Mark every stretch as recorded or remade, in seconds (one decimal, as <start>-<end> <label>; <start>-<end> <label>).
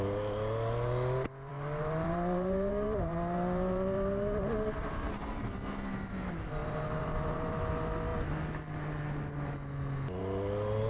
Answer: 0.0-1.5 recorded; 1.5-5.7 remade; 5.7-6.6 recorded; 6.6-7.7 remade; 7.7-10.9 recorded